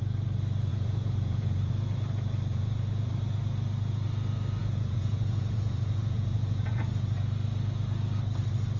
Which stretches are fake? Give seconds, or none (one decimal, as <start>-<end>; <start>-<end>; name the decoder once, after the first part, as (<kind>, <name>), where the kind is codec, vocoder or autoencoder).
0.7-1.7 (vocoder, Vocos); 2.5-3.1; 4.6-6.9